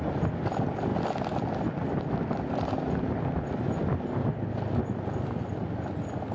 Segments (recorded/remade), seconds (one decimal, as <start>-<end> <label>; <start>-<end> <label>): 0.0-6.3 recorded